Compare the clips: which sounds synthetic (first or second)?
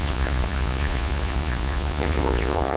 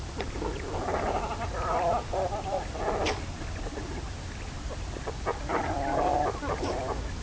first